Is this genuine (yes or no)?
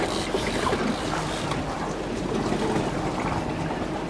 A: yes